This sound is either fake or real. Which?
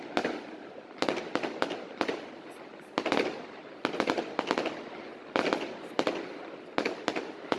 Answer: real